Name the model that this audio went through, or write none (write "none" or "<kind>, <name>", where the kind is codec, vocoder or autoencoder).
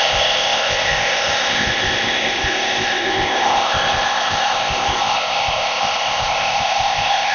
codec, ZipCodec